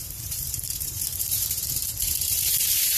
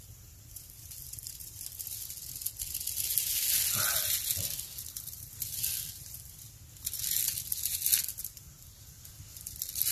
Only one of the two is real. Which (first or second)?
second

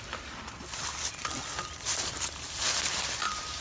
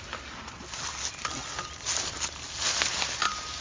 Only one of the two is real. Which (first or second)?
second